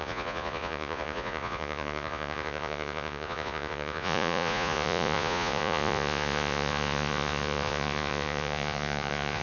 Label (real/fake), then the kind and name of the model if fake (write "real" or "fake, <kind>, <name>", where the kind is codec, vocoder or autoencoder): fake, vocoder, Vocos